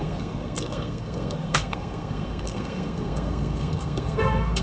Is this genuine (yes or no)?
no